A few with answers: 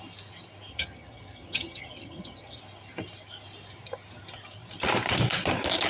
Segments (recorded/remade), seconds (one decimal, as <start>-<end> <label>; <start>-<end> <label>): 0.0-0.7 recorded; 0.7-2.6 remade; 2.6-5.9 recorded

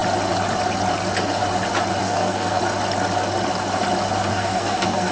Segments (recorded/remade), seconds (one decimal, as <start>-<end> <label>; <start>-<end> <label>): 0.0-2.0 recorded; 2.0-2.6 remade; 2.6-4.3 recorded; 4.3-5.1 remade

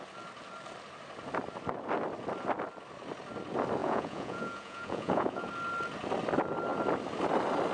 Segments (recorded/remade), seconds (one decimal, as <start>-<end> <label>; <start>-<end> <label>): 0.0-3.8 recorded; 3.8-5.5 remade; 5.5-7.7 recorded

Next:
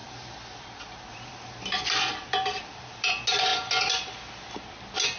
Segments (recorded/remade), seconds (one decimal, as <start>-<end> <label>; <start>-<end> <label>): 0.0-3.1 remade; 3.1-5.2 recorded

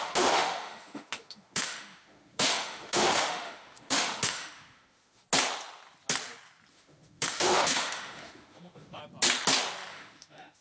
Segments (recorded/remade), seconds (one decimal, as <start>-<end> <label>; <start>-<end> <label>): 0.0-5.2 remade; 5.2-6.7 recorded; 6.7-9.0 remade; 9.0-9.9 recorded; 9.9-10.6 remade

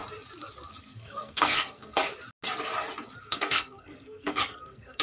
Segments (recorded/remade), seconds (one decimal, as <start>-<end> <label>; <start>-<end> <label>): 0.0-0.8 recorded; 0.8-2.0 remade; 2.0-3.2 recorded; 3.2-5.0 remade